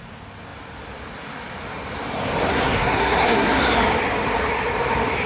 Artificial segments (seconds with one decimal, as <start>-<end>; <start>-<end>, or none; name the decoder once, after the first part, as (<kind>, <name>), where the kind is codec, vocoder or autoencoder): 2.5-3.6 (codec, SNAC)